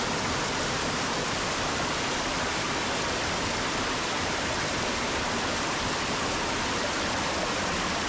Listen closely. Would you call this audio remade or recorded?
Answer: remade